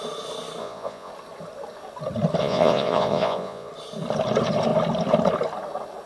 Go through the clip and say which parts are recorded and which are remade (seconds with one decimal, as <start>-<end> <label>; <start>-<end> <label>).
0.0-0.6 recorded; 0.6-1.1 remade; 1.1-2.4 recorded; 2.4-3.7 remade; 3.7-6.1 recorded